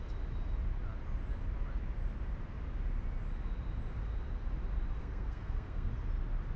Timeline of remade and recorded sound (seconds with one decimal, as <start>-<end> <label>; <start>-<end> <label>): 0.0-5.0 recorded; 5.0-5.9 remade; 5.9-6.6 recorded